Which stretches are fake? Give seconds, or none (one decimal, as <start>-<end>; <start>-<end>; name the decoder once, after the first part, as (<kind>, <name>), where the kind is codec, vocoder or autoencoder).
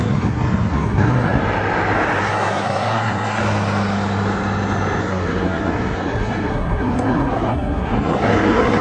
0.0-1.4 (codec, SNAC); 2.2-3.4; 5.0-8.8